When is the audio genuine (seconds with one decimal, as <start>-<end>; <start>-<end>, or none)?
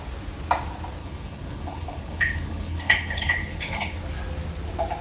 0.0-1.0; 4.0-5.0